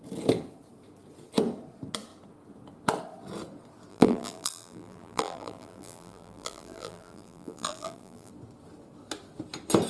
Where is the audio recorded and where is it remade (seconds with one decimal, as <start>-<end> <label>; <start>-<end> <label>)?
0.0-3.9 recorded; 3.9-8.3 remade; 8.3-9.9 recorded

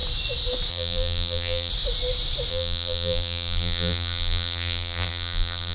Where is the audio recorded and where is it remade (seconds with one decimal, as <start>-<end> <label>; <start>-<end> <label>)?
0.0-0.7 recorded; 0.7-1.7 remade; 1.7-2.5 recorded; 2.5-5.7 remade

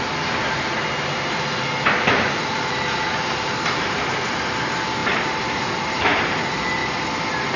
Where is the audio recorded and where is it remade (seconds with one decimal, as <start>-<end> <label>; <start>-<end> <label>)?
0.0-6.8 remade; 6.8-7.6 recorded

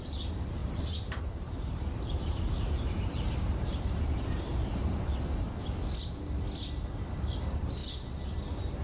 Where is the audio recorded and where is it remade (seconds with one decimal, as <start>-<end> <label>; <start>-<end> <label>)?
0.0-4.5 remade; 4.5-6.6 recorded; 6.6-7.8 remade; 7.8-8.4 recorded; 8.4-8.8 remade

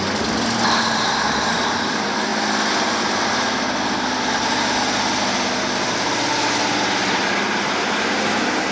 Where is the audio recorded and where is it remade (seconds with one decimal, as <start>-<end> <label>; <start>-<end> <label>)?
0.0-8.7 recorded

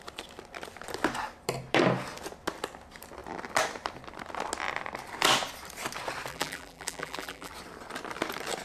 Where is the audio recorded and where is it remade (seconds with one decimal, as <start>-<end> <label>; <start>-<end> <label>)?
0.0-6.3 recorded; 6.3-7.5 remade; 7.5-8.6 recorded

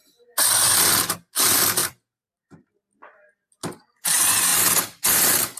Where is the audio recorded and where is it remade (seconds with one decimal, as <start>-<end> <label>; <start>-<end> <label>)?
0.0-1.8 recorded; 1.8-2.6 remade; 2.6-5.6 recorded

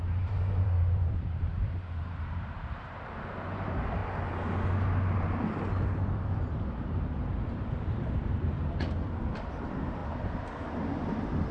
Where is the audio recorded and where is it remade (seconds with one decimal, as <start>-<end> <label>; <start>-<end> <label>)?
0.0-4.0 remade; 4.0-6.7 recorded; 6.7-10.0 remade; 10.0-11.5 recorded